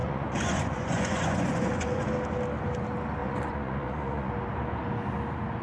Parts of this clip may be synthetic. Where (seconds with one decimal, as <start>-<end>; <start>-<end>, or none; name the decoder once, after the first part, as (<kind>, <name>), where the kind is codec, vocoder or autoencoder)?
0.0-2.1 (vocoder, Vocos); 3.2-4.3